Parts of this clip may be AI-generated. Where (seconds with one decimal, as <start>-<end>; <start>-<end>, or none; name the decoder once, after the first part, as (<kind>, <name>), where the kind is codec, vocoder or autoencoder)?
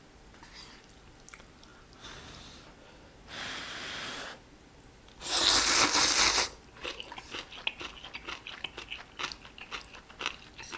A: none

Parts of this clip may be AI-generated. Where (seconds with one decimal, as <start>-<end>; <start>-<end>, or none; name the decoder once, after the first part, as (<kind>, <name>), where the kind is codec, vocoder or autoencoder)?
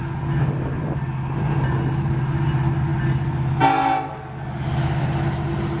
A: none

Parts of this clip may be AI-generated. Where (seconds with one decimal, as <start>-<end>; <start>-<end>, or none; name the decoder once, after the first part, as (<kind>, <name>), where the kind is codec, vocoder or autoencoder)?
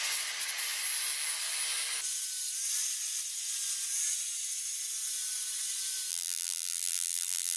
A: 6.1-7.6 (vocoder, BigVGAN v2)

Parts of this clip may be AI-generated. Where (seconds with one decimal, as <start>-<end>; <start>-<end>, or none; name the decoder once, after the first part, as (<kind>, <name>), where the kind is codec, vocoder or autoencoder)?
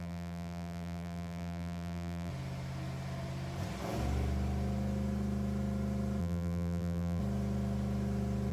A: 0.0-2.3 (vocoder, BigVGAN v2); 6.2-7.2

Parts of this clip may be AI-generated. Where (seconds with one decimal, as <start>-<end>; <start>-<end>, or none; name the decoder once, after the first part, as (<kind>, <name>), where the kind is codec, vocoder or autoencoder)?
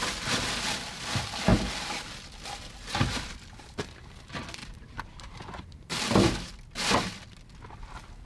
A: 4.6-6.0 (vocoder, BigVGAN v2)